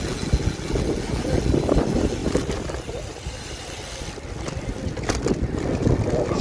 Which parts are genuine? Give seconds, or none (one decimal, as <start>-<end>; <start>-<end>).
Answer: 0.0-2.2; 4.1-6.4